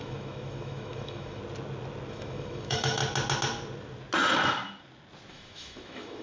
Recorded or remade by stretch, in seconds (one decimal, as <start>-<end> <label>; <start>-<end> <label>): 0.0-1.4 remade; 1.4-2.1 recorded; 2.1-3.0 remade; 3.0-5.3 recorded; 5.3-6.2 remade